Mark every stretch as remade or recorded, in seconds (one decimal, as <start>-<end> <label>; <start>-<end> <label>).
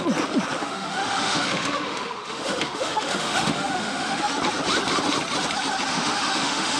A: 0.0-0.6 recorded; 0.6-4.3 remade; 4.3-5.9 recorded; 5.9-6.8 remade